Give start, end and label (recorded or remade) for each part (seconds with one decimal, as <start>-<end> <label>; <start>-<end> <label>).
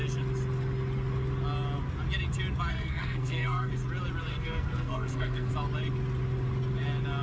0.0-2.7 recorded; 2.7-3.7 remade; 3.7-4.3 recorded; 4.3-5.5 remade; 5.5-7.2 recorded